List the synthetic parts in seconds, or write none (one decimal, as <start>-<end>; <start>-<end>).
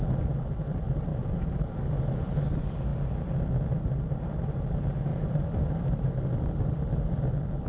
1.1-1.7; 5.1-6.2